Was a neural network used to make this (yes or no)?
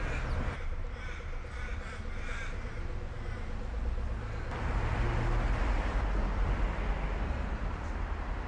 no